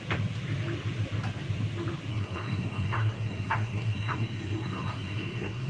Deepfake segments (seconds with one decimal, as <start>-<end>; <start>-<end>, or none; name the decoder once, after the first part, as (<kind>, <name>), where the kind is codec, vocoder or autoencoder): 2.1-5.7 (codec, SNAC)